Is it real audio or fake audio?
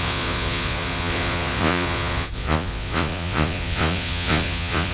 fake